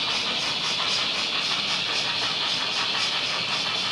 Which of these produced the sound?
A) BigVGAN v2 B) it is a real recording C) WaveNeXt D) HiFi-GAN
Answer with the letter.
B